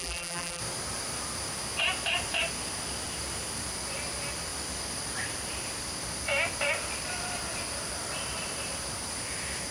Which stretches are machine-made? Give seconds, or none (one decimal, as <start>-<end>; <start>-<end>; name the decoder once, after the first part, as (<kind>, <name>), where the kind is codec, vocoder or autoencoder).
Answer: 0.0-0.6 (vocoder, BigVGAN v2)